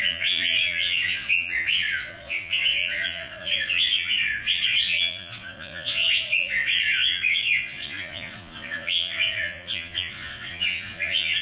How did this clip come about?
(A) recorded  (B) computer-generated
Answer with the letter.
B